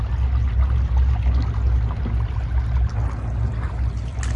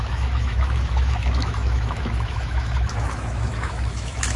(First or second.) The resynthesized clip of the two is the second